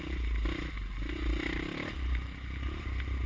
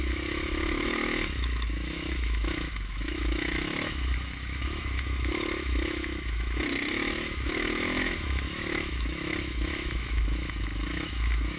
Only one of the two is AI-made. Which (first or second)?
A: second